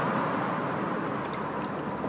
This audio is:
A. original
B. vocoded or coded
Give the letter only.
A